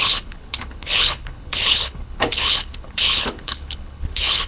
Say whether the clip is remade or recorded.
remade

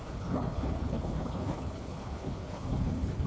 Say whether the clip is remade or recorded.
remade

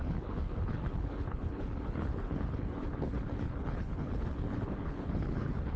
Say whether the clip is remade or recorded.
remade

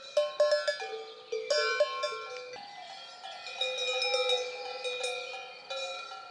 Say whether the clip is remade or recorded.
recorded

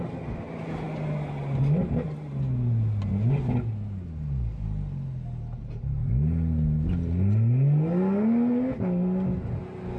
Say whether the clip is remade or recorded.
recorded